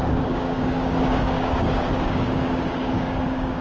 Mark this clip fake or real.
fake